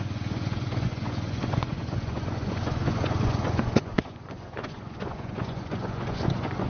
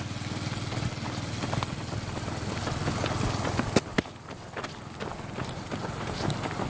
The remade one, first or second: first